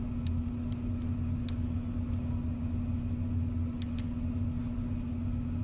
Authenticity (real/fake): real